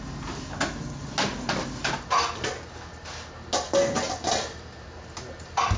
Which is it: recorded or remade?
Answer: recorded